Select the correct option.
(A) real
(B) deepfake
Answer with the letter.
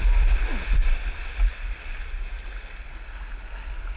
A